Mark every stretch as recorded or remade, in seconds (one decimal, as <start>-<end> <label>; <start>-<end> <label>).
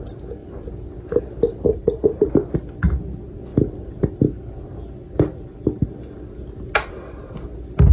0.0-1.7 recorded; 1.7-2.3 remade; 2.3-7.9 recorded